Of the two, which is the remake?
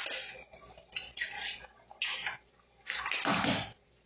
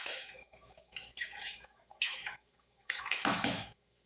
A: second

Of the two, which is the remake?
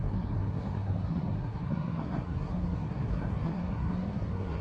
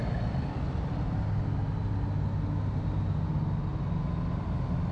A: first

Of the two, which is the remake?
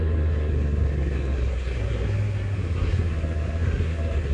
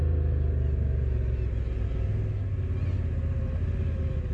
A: first